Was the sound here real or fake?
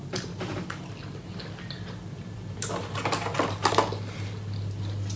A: real